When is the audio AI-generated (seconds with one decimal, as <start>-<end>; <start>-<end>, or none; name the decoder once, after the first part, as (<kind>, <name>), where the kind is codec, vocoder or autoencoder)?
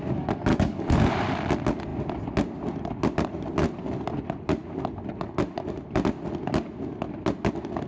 0.5-1.1 (codec, DAC)